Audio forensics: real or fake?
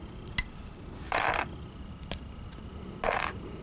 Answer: real